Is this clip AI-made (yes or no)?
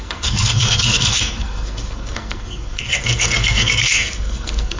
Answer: yes